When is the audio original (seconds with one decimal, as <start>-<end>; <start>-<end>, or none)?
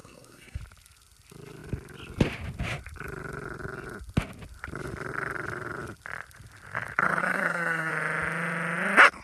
0.6-7.2; 7.9-9.2